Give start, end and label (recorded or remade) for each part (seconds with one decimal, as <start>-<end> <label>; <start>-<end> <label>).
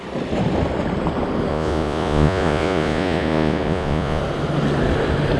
0.0-1.5 recorded; 1.5-4.2 remade; 4.2-5.4 recorded